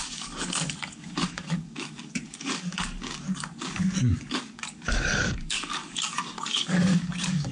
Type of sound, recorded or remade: remade